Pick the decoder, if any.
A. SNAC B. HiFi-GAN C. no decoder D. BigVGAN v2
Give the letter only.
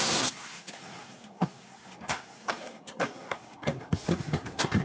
A